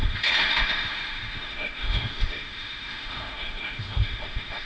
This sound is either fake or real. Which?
fake